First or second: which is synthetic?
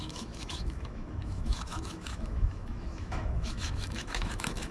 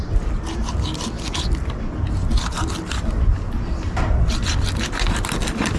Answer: first